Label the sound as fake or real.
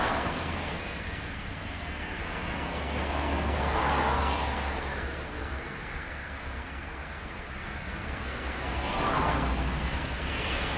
fake